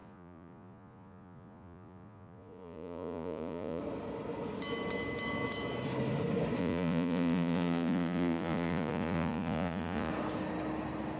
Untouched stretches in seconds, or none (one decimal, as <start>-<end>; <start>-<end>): 3.8-6.6; 10.1-11.2